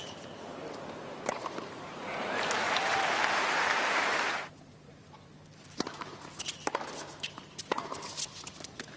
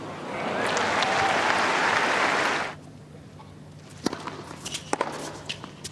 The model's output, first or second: first